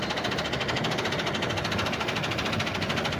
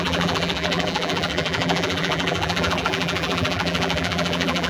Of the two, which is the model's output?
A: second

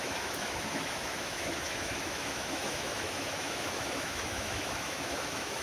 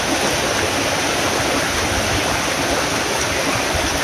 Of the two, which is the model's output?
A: first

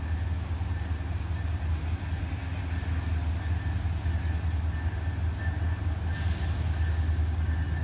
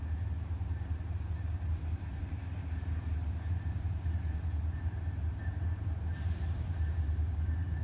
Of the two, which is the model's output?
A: second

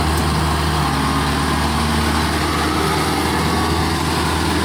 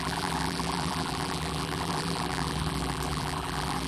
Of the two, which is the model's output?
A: second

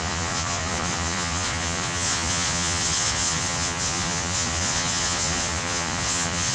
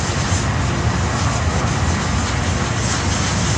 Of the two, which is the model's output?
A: first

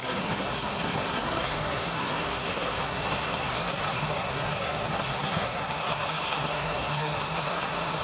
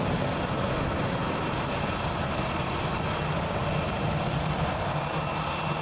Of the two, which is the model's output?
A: first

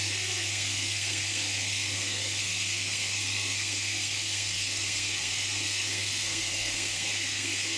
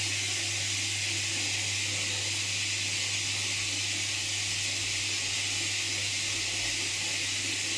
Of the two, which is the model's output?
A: first